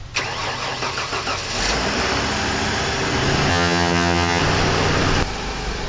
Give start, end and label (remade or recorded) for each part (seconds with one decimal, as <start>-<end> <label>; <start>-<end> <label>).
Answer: 0.0-3.5 recorded; 3.5-4.4 remade; 4.4-5.9 recorded